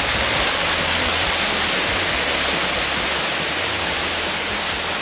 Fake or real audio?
real